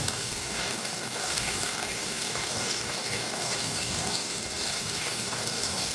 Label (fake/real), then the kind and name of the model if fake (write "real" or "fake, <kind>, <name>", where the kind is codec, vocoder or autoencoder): fake, codec, DAC